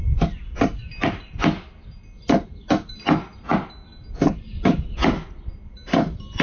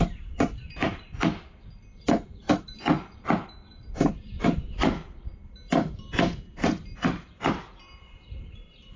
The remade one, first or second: second